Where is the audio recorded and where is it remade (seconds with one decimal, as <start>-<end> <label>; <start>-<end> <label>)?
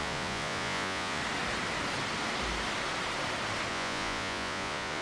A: 0.0-1.2 remade; 1.2-3.7 recorded; 3.7-5.0 remade